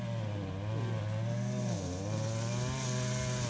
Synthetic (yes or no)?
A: no